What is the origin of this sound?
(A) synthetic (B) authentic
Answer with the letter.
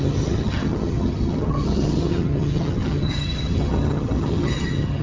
A